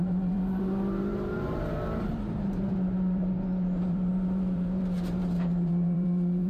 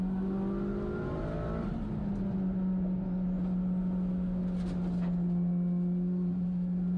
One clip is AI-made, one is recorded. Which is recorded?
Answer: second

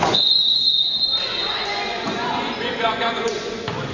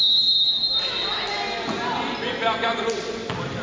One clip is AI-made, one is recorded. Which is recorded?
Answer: second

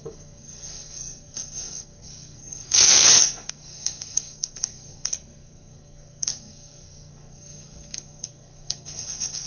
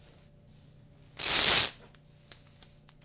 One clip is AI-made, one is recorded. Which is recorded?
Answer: second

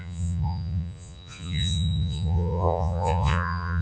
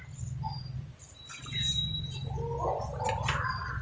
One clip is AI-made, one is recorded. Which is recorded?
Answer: second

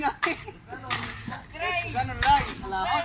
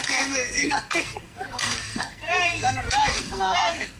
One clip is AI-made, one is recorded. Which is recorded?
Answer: first